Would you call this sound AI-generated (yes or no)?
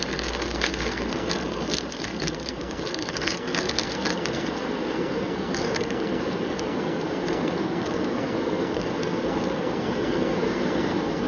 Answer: yes